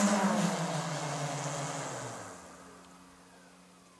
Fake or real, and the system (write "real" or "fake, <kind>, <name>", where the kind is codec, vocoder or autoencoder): real